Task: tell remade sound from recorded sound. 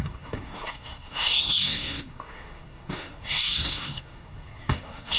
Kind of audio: remade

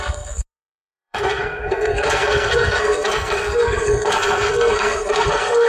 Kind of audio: remade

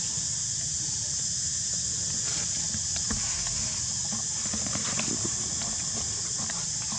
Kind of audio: recorded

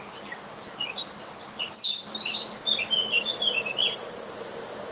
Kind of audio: recorded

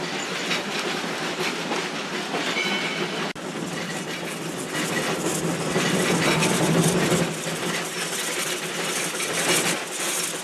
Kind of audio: recorded